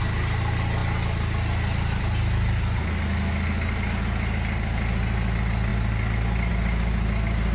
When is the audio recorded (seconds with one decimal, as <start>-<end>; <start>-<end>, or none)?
0.0-7.5